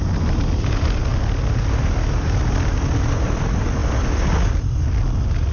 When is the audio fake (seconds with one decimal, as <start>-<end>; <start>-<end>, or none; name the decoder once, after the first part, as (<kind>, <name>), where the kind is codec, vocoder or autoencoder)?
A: none